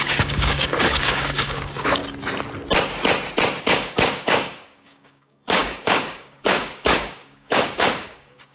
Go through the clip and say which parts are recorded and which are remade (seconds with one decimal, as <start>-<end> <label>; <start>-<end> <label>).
0.0-2.0 remade; 2.0-3.6 recorded; 3.6-8.5 remade